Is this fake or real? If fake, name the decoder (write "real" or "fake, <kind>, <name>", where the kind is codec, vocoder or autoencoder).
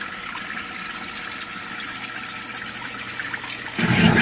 real